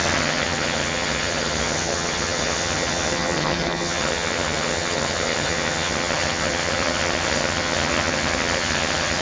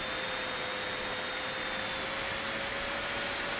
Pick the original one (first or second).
second